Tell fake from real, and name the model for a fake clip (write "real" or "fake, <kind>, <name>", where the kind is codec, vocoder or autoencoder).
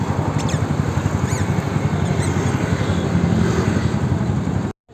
real